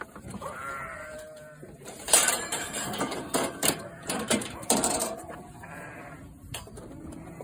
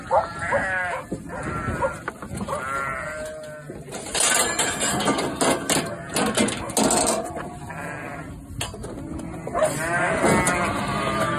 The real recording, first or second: second